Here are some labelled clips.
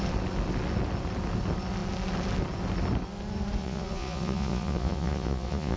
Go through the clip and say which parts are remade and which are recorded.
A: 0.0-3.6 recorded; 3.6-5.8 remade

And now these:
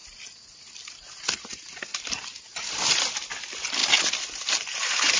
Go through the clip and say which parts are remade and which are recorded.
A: 0.0-5.2 recorded

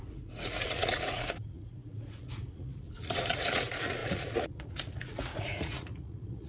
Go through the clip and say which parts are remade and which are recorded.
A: 0.0-6.5 remade